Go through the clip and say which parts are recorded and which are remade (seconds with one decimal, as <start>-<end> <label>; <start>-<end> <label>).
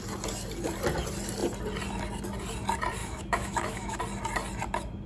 0.0-3.0 recorded; 3.0-4.0 remade; 4.0-5.1 recorded